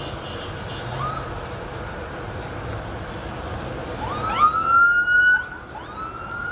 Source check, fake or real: real